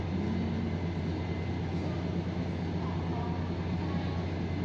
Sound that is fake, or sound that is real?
real